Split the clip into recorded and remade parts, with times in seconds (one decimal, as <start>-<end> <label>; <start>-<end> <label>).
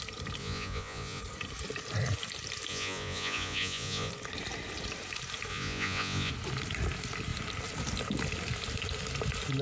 0.0-0.4 recorded; 0.4-1.2 remade; 1.2-2.7 recorded; 2.7-4.1 remade; 4.1-5.5 recorded; 5.5-6.3 remade; 6.3-9.6 recorded